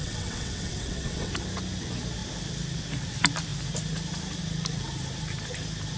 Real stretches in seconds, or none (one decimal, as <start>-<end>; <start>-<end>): 1.3-6.0